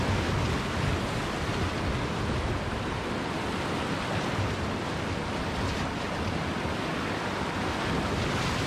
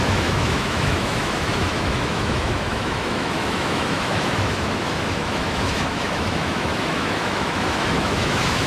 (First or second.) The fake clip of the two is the second